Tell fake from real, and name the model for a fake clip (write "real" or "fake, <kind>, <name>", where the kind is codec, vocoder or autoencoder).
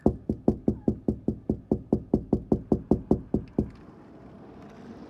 real